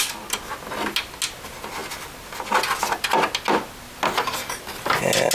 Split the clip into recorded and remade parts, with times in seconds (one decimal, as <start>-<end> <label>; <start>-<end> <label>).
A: 0.0-5.3 recorded